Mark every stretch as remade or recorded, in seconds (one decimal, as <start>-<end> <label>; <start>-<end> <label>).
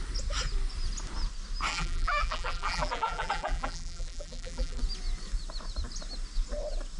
0.0-1.7 recorded; 1.7-4.8 remade; 4.8-7.0 recorded